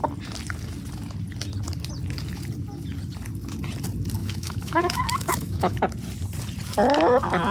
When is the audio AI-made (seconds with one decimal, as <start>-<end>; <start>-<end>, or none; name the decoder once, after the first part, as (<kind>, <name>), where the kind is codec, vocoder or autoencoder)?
4.2-5.8 (autoencoder, DAC-VAE)